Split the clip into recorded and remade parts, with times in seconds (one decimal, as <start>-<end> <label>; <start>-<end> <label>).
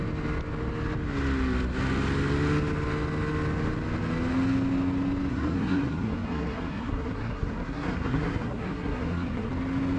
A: 0.0-5.3 recorded; 5.3-9.5 remade; 9.5-10.0 recorded